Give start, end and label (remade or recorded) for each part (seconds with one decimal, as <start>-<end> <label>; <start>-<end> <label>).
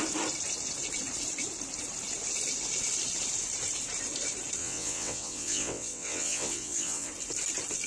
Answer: 0.0-4.6 recorded; 4.6-7.1 remade; 7.1-7.9 recorded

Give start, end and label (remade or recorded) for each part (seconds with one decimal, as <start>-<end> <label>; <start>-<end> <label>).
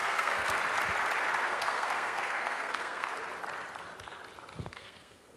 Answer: 0.0-0.6 remade; 0.6-1.4 recorded; 1.4-3.1 remade; 3.1-4.6 recorded; 4.6-5.4 remade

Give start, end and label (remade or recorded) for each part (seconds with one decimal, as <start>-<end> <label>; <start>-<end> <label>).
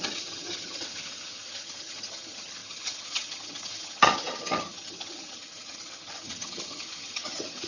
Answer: 0.0-7.7 remade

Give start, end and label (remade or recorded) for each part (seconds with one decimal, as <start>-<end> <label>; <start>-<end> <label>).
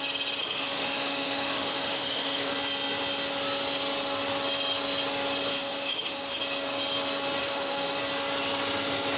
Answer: 0.0-0.4 recorded; 0.4-2.5 remade; 2.5-5.5 recorded; 5.5-6.4 remade; 6.4-7.4 recorded; 7.4-8.0 remade; 8.0-9.2 recorded